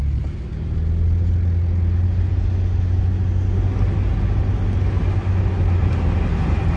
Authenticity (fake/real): real